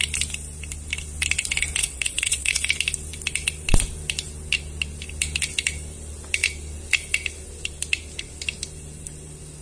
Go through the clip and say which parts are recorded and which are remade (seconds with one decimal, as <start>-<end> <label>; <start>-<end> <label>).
0.0-1.8 recorded; 1.8-2.7 remade; 2.7-9.6 recorded